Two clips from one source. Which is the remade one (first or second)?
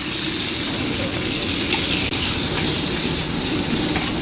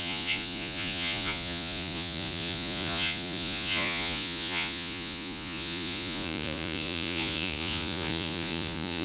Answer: second